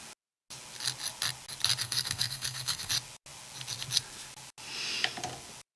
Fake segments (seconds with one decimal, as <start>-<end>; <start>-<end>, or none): 1.8-2.9